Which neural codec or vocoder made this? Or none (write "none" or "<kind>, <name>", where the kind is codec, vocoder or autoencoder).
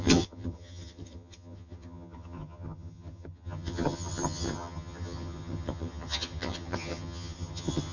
vocoder, HiFi-GAN